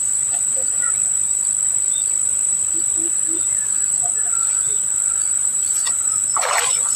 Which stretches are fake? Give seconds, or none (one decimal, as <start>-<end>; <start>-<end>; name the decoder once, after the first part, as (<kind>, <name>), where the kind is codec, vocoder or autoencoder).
5.5-6.1 (vocoder, BigVGAN v2)